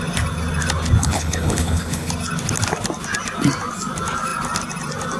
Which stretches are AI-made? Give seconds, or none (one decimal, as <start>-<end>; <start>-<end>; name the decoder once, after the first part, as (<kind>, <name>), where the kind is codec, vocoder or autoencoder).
1.0-2.1 (codec, HILCodec)